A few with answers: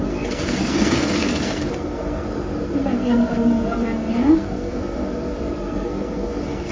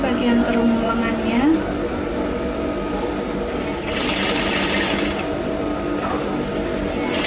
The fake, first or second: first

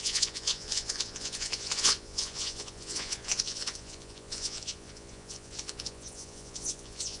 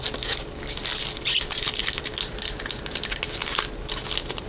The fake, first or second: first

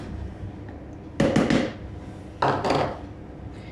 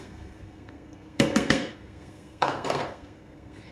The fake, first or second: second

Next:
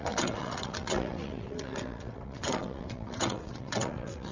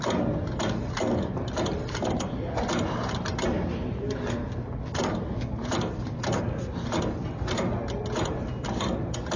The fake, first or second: first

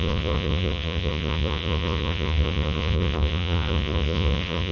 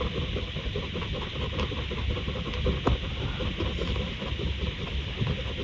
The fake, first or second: first